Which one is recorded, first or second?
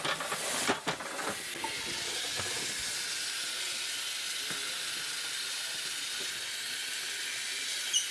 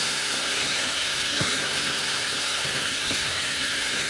first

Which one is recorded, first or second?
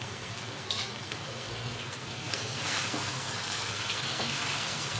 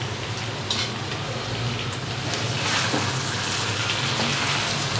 second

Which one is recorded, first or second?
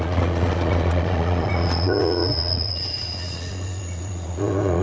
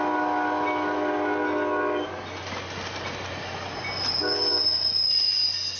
second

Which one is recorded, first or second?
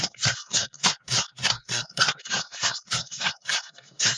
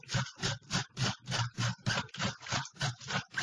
second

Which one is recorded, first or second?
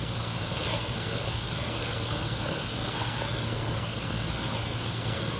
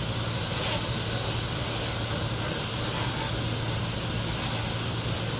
second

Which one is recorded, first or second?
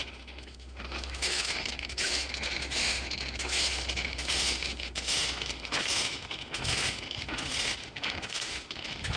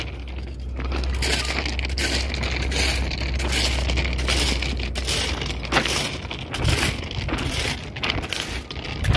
second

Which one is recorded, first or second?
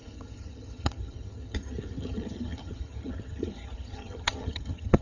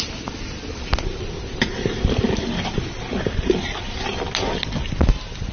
second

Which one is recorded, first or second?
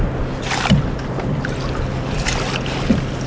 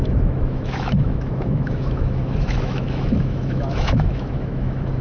first